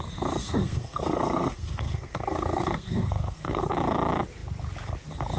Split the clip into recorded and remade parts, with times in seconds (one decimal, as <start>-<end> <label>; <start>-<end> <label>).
0.0-0.4 recorded; 0.4-3.6 remade; 3.6-5.4 recorded